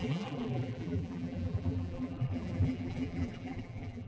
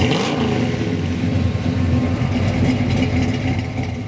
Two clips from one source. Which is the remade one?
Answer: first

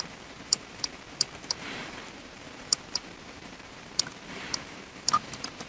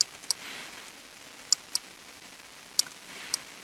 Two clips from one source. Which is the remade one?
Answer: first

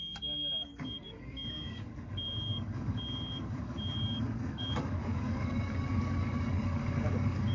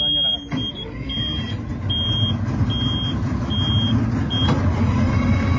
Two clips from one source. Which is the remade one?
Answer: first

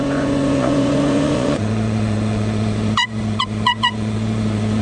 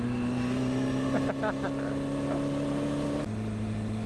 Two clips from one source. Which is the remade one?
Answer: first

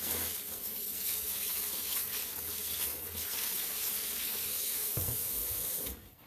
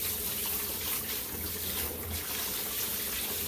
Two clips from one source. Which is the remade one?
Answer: first